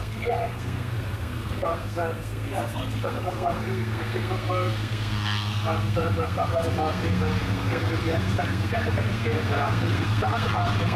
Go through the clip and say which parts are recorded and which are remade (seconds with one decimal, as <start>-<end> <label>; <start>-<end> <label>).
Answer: 0.0-11.0 remade